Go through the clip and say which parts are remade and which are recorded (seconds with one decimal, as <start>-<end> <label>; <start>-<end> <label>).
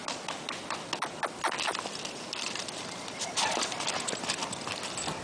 0.0-3.0 recorded; 3.0-4.4 remade; 4.4-5.2 recorded